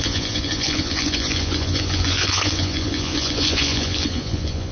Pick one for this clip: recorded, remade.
remade